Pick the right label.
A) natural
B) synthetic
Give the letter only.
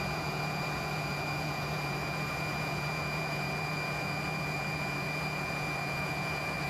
B